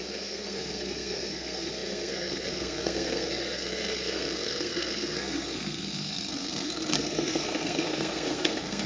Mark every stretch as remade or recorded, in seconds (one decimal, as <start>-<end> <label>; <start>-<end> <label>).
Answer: 0.0-8.9 remade